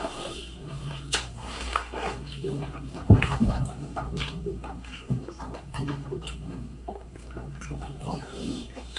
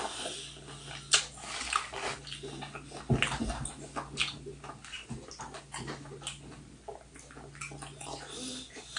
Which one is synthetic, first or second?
first